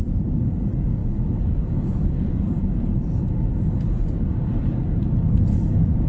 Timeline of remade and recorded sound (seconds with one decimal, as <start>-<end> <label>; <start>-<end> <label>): 0.0-6.1 recorded